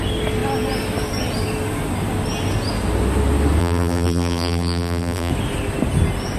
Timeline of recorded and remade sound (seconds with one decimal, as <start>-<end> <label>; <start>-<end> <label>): 0.0-3.6 recorded; 3.6-5.3 remade; 5.3-6.4 recorded